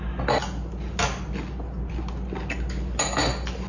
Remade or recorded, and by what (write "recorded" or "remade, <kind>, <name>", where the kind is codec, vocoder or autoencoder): recorded